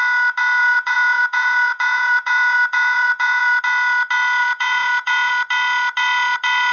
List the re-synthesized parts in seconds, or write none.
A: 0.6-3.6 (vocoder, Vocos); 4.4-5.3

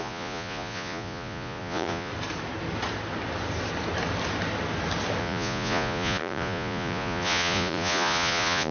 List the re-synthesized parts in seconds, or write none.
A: 0.0-2.1 (vocoder, Vocos); 5.2-8.7

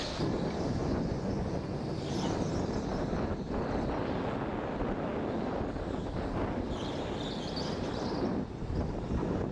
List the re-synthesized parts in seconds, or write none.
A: 0.8-1.8 (vocoder, Vocos)

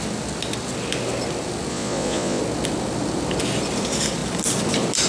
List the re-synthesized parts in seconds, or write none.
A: 1.7-2.4 (vocoder, Vocos)